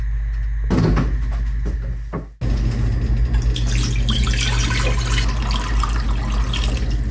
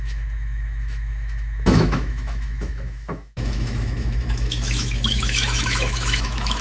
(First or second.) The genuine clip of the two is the first